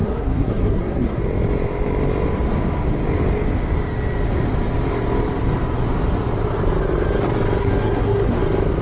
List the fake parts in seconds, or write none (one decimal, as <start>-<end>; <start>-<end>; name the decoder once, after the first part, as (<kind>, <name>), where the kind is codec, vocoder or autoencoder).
0.0-1.2 (codec, SNAC); 7.6-8.4